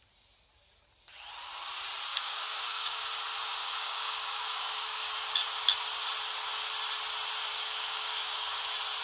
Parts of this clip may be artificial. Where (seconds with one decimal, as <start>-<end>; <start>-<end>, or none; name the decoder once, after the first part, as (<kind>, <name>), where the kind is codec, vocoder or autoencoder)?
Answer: 2.1-3.0 (codec, DAC); 3.6-5.0; 7.5-8.6